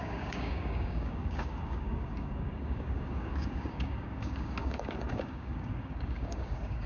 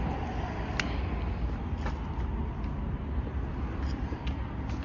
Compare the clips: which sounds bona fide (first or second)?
second